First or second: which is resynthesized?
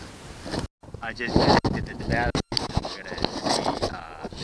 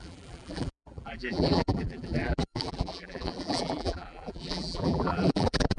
second